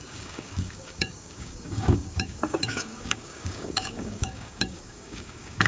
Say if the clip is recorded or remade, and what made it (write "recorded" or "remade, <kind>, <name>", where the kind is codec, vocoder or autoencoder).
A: remade, codec, DAC